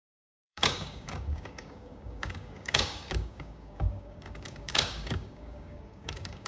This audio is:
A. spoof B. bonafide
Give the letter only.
A